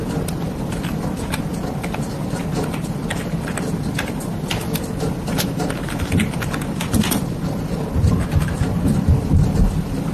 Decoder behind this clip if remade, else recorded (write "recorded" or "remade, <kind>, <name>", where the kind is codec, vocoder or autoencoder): recorded